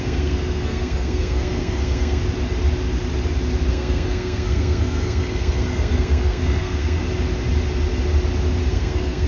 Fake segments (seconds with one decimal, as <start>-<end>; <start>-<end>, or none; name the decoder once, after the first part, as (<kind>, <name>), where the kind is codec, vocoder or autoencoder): 0.0-2.2 (codec, SNAC); 3.7-7.0; 8.7-9.3